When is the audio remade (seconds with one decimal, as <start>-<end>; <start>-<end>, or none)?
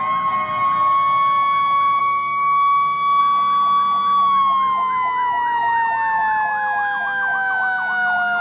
2.0-3.2